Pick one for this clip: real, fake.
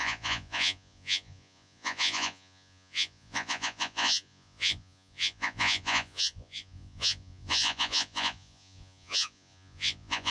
fake